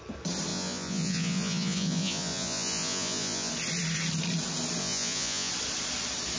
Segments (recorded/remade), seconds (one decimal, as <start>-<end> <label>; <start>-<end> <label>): 0.0-0.5 recorded; 0.5-3.5 remade; 3.5-4.8 recorded; 4.8-5.5 remade; 5.5-6.4 recorded